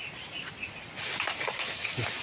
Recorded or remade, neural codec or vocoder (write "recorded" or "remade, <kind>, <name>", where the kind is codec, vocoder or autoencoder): recorded